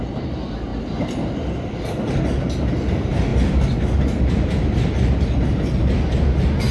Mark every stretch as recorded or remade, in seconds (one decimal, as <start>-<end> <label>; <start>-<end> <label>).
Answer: 0.0-0.7 recorded; 0.7-2.2 remade; 2.2-6.7 recorded